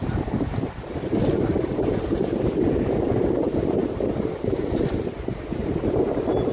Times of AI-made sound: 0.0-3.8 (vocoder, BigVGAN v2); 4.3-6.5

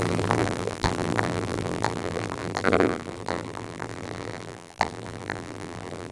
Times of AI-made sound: 0.0-6.1 (vocoder, BigVGAN v2)

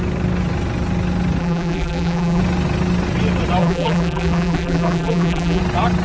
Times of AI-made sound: 1.4-2.4 (vocoder, BigVGAN v2); 3.6-5.6

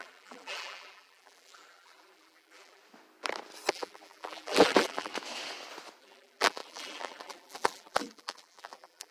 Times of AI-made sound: 0.0-2.8 (vocoder, BigVGAN v2); 3.7-5.1; 6.0-9.1

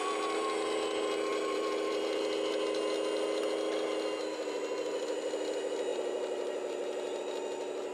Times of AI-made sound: 1.3-2.2 (vocoder, BigVGAN v2); 5.9-7.2

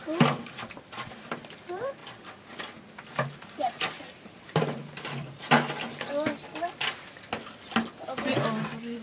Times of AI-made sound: 2.0-6.1 (vocoder, BigVGAN v2)

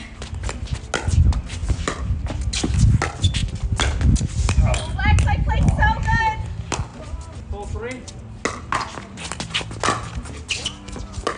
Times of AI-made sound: 1.6-2.1 (vocoder, BigVGAN v2)